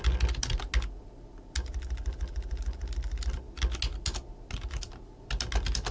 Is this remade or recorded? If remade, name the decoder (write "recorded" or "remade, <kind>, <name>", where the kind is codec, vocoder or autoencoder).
recorded